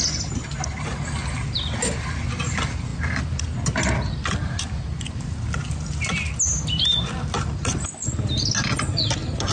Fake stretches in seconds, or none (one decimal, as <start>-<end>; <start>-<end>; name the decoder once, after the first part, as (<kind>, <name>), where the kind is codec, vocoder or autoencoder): none